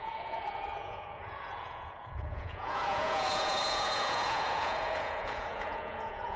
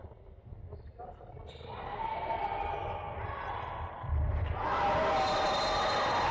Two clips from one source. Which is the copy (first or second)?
first